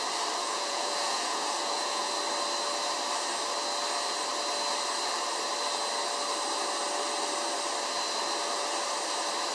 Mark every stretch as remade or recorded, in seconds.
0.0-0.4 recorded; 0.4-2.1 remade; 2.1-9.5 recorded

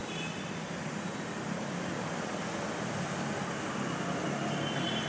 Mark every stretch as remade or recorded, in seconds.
0.0-5.1 recorded

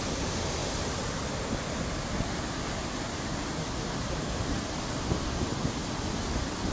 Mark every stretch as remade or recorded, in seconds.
0.0-6.7 recorded

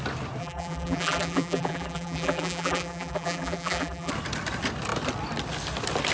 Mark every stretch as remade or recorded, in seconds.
0.0-0.4 recorded; 0.4-4.1 remade; 4.1-6.1 recorded

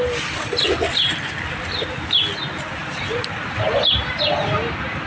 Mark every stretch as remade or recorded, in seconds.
0.0-5.1 recorded

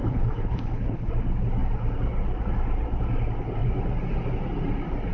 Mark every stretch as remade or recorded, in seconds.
0.0-1.1 remade; 1.1-5.1 recorded

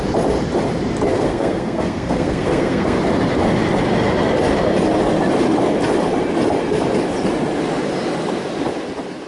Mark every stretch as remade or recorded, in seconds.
0.0-1.1 recorded; 1.1-3.0 remade; 3.0-9.3 recorded

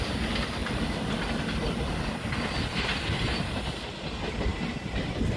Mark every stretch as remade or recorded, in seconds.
0.0-0.6 recorded; 0.6-1.4 remade; 1.4-2.7 recorded; 2.7-3.5 remade; 3.5-5.4 recorded